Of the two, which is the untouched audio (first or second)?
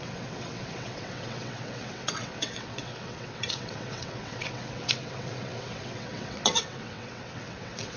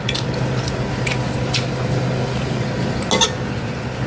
second